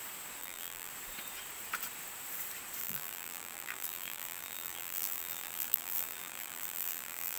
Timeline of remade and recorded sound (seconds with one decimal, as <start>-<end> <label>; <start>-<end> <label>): 0.0-0.4 recorded; 0.4-0.9 remade; 0.9-2.8 recorded; 2.8-7.4 remade